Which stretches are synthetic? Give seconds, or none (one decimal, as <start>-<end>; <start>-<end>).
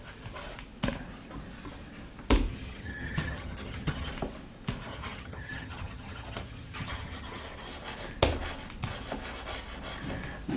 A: 2.5-4.1; 4.9-7.4